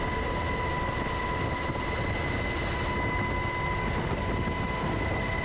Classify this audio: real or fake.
real